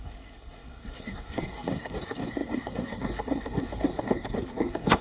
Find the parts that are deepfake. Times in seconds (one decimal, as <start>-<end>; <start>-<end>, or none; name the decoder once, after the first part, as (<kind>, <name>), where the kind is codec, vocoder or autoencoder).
0.0-5.0 (codec, SNAC)